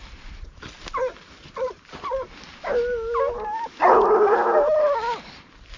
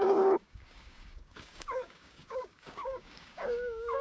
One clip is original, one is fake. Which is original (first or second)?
first